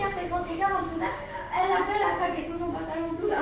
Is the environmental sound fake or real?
fake